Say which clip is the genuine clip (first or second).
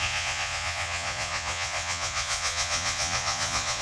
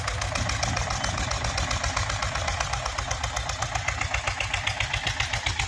second